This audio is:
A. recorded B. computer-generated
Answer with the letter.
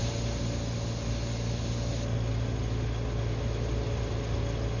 A